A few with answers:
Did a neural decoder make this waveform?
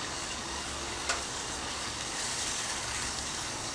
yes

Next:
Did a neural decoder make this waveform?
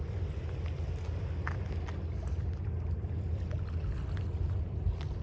no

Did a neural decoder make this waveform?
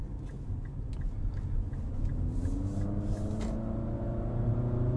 no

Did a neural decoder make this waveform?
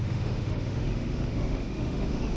yes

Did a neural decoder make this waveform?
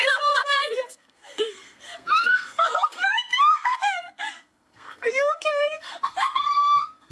yes